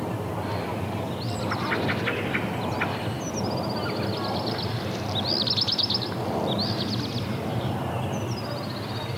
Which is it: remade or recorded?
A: recorded